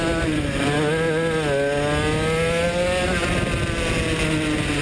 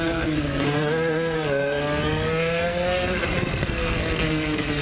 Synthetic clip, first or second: second